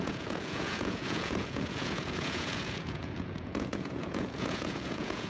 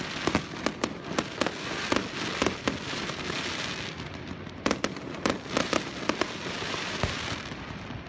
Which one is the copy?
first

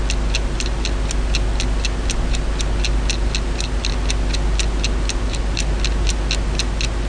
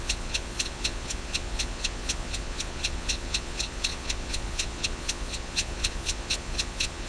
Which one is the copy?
second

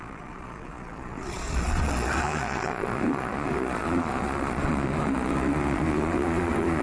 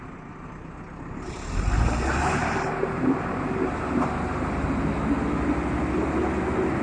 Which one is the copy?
first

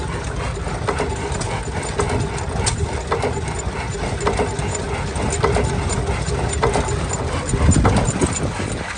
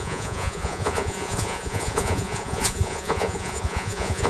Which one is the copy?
second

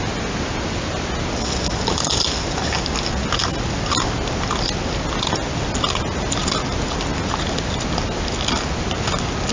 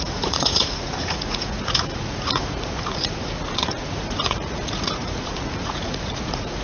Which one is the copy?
second